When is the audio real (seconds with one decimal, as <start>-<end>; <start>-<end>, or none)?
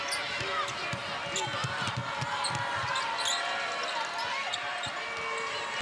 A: 0.0-5.8